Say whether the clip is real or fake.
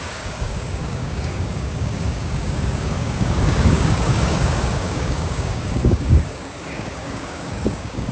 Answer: fake